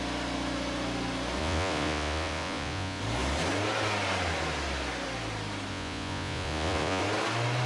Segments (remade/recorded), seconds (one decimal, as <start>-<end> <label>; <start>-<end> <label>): 0.0-1.4 recorded; 1.4-3.0 remade; 3.0-5.7 recorded; 5.7-7.0 remade; 7.0-7.7 recorded